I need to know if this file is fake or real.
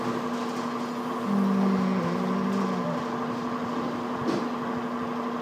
real